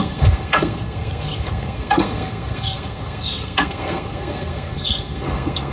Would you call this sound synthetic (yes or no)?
yes